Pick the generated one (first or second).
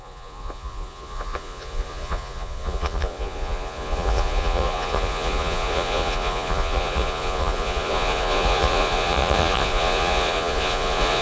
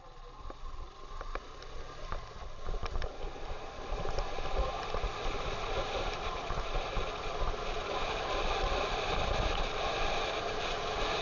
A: first